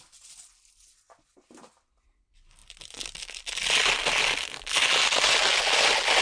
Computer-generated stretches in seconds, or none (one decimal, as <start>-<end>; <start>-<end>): none